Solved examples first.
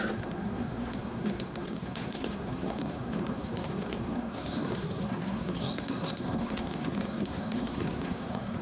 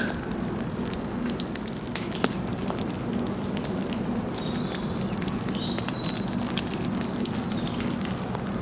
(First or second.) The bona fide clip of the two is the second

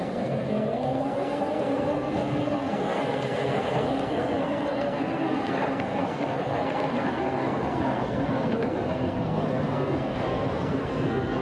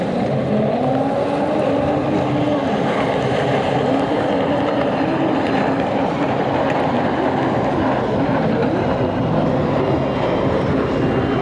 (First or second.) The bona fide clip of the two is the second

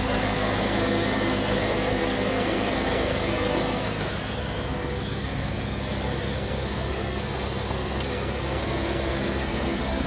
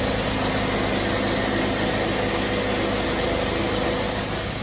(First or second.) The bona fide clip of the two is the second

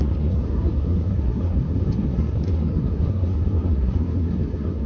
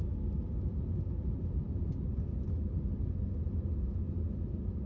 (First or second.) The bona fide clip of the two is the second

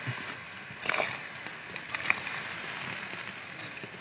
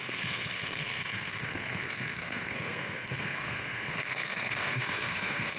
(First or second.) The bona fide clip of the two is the first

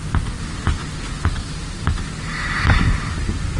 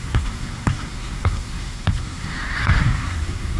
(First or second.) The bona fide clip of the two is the first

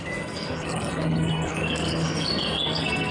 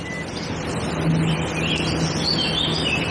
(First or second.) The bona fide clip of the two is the second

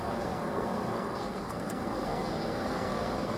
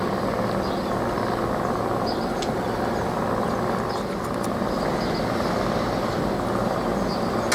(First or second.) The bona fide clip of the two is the second